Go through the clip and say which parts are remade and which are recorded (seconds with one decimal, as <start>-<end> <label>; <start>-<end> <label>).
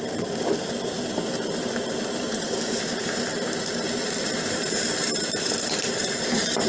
0.0-6.7 remade